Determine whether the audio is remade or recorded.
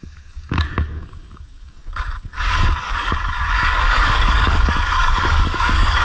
remade